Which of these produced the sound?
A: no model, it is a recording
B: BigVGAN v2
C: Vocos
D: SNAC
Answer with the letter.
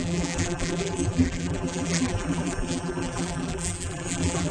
B